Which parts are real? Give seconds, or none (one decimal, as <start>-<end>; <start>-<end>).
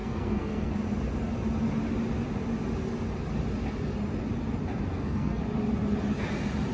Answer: 0.7-4.9; 5.4-6.7